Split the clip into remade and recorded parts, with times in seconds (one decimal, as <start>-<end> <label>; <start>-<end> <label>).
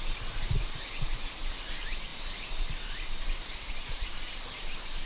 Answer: 0.0-5.0 remade